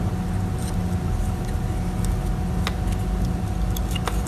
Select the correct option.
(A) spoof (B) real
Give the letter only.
B